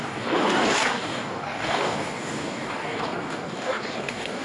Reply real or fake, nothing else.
fake